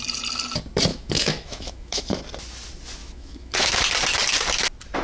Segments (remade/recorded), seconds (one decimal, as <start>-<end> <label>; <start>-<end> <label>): 0.0-0.9 recorded; 0.9-2.2 remade; 2.2-3.0 recorded; 3.0-3.8 remade; 3.8-5.0 recorded